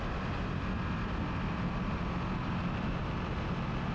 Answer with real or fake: real